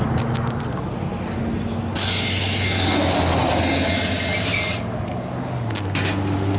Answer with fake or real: real